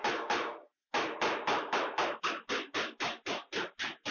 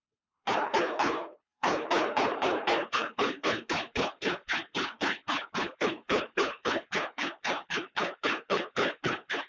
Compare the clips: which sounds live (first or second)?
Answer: first